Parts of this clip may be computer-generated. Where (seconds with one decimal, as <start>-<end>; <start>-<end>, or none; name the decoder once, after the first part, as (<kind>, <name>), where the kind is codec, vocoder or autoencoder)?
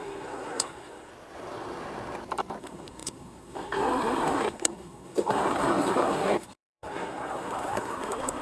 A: 0.0-1.1 (codec, SNAC); 2.6-8.4